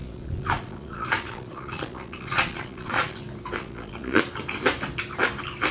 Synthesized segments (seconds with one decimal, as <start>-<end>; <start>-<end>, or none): 0.0-3.2; 3.6-4.2